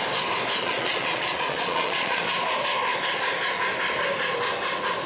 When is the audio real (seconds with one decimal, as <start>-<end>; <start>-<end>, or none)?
0.0-0.6; 2.2-5.1